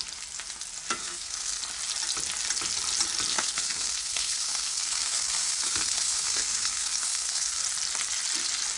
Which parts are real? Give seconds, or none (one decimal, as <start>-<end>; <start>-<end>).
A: 0.0-1.0; 1.6-3.3; 7.6-8.8

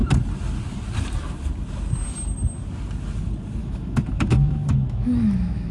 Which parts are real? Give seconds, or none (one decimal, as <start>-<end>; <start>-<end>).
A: 0.0-3.6

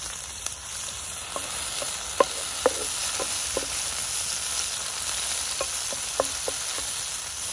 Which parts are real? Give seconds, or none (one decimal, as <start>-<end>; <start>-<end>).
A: 0.0-7.5